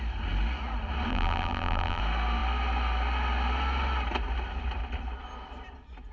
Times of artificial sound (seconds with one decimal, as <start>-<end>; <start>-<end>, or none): 1.1-2.0

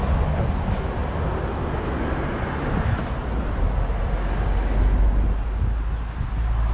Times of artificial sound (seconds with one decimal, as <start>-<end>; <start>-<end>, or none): none